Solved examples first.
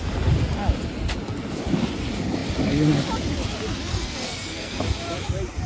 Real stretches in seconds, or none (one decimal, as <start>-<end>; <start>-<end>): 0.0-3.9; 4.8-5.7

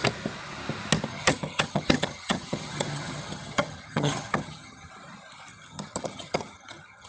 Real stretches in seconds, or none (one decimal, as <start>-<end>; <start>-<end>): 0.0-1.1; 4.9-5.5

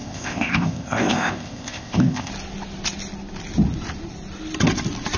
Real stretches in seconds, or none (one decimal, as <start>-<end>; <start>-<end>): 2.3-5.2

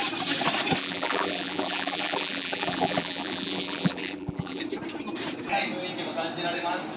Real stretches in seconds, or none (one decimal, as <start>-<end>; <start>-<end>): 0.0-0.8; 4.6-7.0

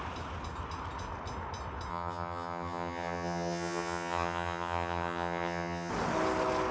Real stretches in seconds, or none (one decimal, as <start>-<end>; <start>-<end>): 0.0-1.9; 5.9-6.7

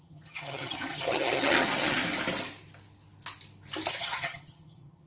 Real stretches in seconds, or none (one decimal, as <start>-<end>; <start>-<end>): 2.0-3.9